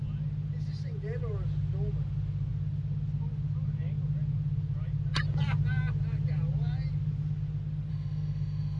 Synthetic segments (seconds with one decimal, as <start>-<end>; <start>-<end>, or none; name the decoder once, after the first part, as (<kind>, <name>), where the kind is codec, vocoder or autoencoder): 7.9-8.8 (autoencoder, DAC-VAE)